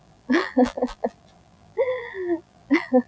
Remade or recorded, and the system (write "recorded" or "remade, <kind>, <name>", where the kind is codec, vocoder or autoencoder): remade, vocoder, BigVGAN v2